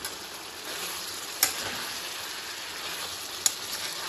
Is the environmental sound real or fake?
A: real